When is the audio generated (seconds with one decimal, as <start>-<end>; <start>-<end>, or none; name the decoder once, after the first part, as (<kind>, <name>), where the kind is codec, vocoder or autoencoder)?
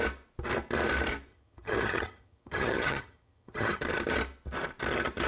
1.3-3.8 (vocoder, HiFi-GAN)